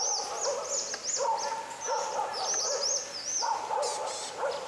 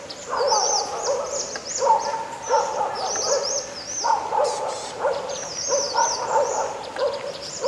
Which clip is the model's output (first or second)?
second